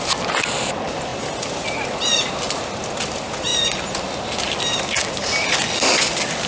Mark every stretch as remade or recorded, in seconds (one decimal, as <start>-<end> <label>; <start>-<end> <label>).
0.0-6.5 recorded